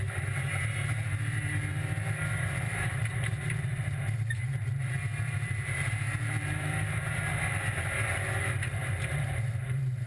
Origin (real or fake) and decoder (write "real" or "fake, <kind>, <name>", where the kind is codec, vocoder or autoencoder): fake, vocoder, BigVGAN v2